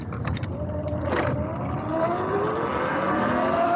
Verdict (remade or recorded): recorded